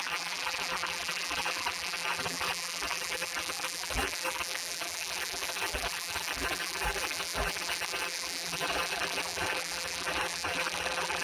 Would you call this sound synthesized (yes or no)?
yes